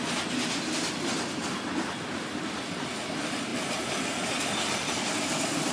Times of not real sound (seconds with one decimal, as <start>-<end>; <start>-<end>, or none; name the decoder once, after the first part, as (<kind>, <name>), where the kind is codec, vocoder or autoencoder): none